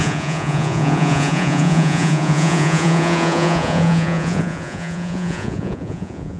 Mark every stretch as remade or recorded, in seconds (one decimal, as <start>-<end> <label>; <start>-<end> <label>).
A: 0.0-6.4 remade